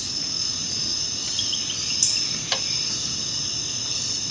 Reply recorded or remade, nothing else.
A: recorded